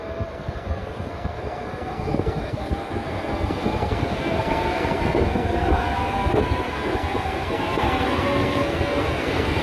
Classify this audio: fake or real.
fake